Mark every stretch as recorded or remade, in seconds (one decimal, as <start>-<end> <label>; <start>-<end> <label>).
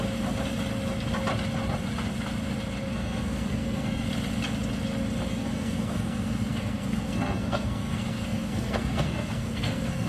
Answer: 0.0-2.9 recorded; 2.9-4.1 remade; 4.1-5.3 recorded; 5.3-10.1 remade